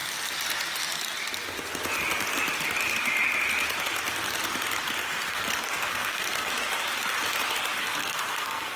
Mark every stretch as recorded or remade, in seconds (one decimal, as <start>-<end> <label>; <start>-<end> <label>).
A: 0.0-5.0 recorded; 5.0-6.5 remade; 6.5-8.0 recorded; 8.0-8.8 remade